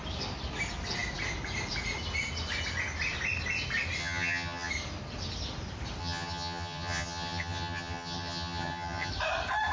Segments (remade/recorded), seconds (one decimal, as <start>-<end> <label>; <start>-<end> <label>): 0.0-4.0 recorded; 4.0-4.7 remade; 4.7-6.0 recorded; 6.0-9.1 remade; 9.1-9.7 recorded

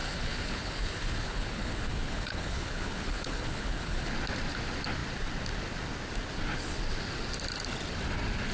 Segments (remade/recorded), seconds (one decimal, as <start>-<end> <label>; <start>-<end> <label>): 0.0-4.1 remade; 4.1-8.5 recorded

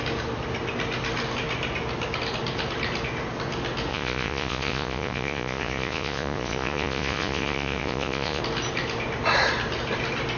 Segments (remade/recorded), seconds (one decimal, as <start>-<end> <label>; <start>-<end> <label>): 0.0-3.9 recorded; 3.9-8.4 remade; 8.4-10.4 recorded

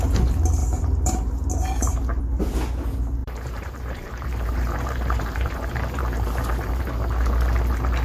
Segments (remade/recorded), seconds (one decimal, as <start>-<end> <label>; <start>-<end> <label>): 0.0-0.6 recorded; 0.6-1.3 remade; 1.3-3.2 recorded; 3.2-6.8 remade; 6.8-8.0 recorded

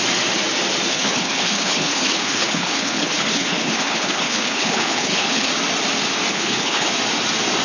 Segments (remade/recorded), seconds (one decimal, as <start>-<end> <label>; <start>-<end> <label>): 0.0-0.9 recorded; 0.9-5.5 remade; 5.5-6.3 recorded; 6.3-6.9 remade; 6.9-7.6 recorded

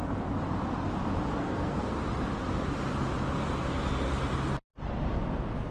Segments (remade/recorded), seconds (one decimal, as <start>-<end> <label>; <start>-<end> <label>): 0.0-1.4 recorded; 1.4-2.0 remade; 2.0-5.7 recorded

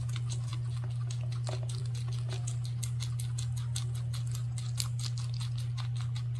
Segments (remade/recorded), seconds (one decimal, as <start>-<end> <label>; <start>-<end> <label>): 0.0-6.4 recorded